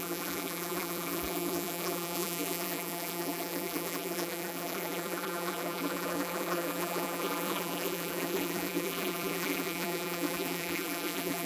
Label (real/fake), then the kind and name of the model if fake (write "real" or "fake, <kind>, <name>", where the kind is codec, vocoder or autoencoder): fake, vocoder, BigVGAN v2